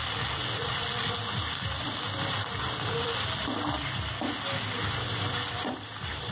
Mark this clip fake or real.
real